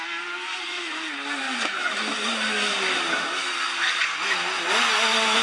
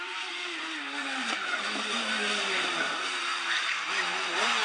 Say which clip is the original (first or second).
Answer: first